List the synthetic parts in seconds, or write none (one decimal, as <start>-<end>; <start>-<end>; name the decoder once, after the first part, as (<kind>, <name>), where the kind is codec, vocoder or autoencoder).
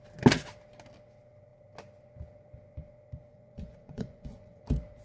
3.3-4.6 (vocoder, Vocos)